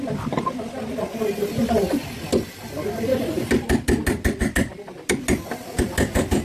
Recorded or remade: recorded